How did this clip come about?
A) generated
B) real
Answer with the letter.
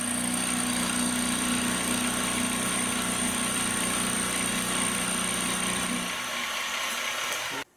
B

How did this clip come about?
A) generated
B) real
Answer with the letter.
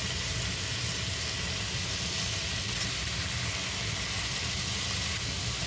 B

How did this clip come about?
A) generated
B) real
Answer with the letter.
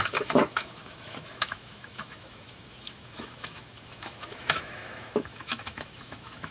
A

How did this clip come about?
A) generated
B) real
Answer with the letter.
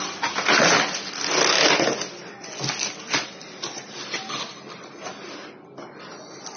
B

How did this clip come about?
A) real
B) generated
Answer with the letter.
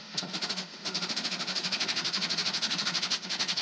B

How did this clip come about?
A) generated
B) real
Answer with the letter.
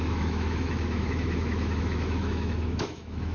A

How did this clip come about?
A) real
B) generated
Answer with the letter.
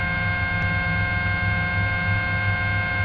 A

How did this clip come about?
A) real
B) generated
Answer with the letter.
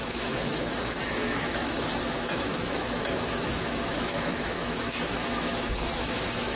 B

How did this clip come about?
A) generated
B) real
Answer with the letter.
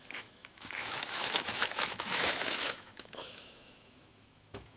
A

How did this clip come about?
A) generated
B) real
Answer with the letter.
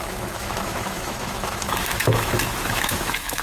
A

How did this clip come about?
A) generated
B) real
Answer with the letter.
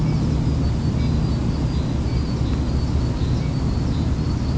B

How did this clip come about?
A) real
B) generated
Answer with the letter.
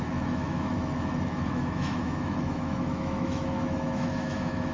B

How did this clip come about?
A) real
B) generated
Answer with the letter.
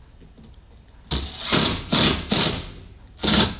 A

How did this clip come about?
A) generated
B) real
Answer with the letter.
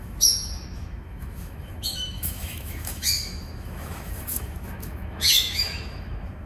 A